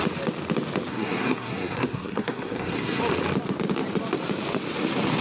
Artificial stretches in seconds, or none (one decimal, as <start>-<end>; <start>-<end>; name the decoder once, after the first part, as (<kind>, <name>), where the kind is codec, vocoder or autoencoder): 0.9-3.0 (codec, SNAC)